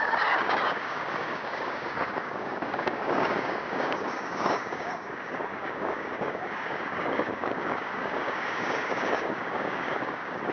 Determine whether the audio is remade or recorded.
remade